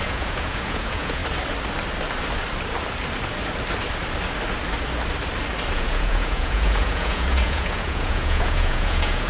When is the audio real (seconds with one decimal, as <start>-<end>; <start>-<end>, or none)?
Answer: 1.2-5.7